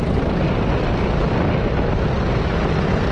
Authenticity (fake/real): real